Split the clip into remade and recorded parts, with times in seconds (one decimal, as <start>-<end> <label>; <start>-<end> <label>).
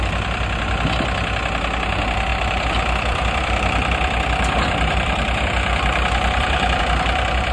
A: 0.0-2.3 recorded; 2.3-6.8 remade; 6.8-7.5 recorded